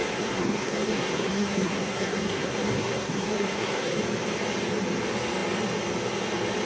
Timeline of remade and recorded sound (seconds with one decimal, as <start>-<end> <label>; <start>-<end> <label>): 0.0-4.0 remade; 4.0-6.7 recorded